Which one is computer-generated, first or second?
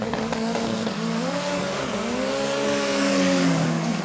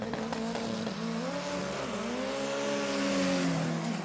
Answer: first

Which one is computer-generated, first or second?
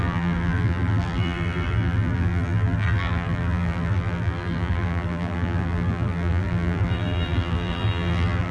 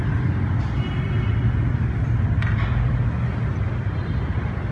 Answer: first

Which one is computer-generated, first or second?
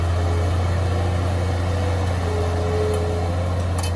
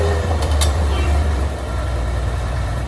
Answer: second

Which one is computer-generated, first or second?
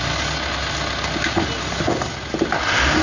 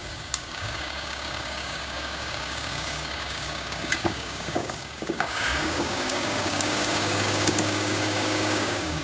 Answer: second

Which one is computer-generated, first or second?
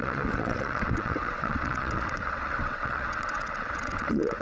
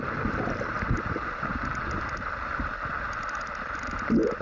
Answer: first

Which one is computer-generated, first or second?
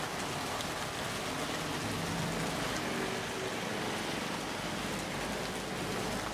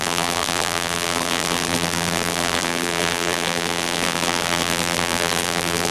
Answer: second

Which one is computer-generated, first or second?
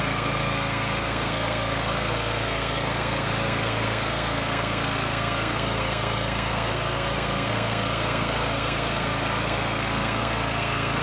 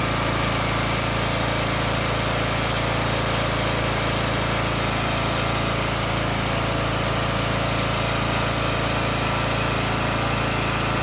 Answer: first